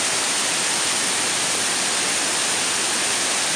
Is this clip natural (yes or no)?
yes